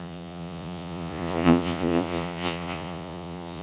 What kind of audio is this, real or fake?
fake